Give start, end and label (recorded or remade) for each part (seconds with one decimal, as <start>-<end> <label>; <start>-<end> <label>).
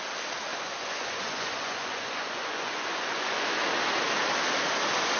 0.0-0.5 recorded; 0.5-3.6 remade; 3.6-5.2 recorded